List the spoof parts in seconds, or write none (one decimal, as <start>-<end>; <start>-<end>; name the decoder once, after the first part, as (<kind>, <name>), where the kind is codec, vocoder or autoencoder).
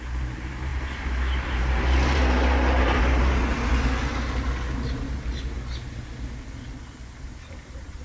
0.0-3.7 (vocoder, BigVGAN v2); 7.5-8.0